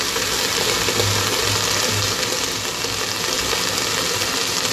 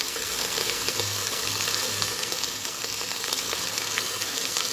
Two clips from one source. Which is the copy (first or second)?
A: second